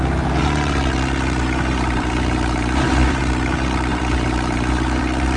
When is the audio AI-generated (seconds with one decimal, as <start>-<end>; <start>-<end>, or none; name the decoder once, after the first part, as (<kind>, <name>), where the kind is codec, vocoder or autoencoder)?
1.4-3.2 (vocoder, BigVGAN v2); 3.9-5.0